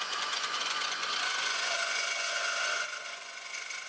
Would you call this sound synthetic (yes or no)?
yes